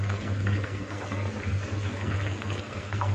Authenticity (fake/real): fake